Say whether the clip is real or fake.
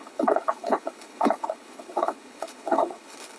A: fake